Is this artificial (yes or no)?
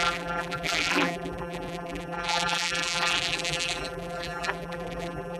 yes